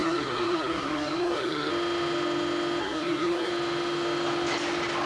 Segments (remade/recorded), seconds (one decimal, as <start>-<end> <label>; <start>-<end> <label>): 0.0-1.7 remade; 1.7-2.8 recorded; 2.8-3.5 remade; 3.5-5.1 recorded